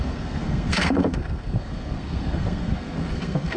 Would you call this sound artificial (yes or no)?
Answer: yes